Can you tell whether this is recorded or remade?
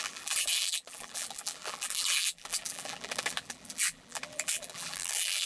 remade